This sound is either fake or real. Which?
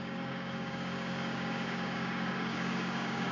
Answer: fake